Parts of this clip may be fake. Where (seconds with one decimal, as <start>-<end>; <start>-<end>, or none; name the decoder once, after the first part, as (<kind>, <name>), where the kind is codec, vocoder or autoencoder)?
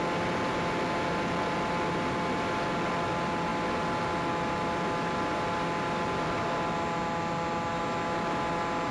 none